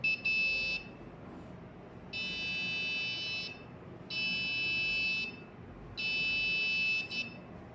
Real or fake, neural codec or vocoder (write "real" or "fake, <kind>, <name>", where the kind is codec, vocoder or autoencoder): real